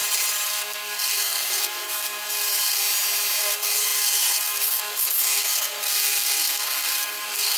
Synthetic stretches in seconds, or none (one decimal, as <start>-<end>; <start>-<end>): 0.5-2.8; 3.4-7.6